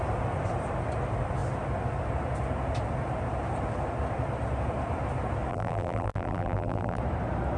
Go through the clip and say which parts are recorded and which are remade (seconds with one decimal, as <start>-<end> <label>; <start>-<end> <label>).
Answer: 0.0-5.5 recorded; 5.5-7.0 remade; 7.0-7.6 recorded